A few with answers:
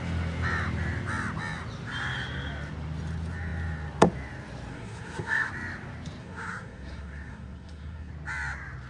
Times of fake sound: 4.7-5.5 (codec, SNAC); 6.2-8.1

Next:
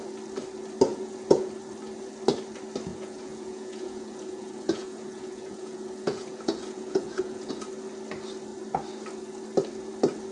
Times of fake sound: 0.9-1.5 (vocoder, Vocos); 2.9-7.5